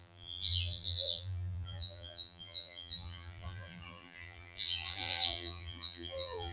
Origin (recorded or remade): remade